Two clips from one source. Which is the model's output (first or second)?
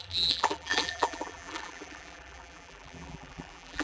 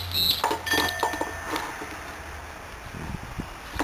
first